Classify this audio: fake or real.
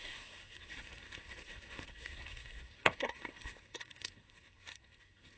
fake